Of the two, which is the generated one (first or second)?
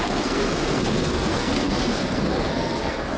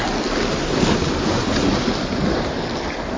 first